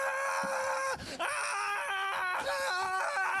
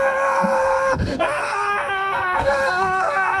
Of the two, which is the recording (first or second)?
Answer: first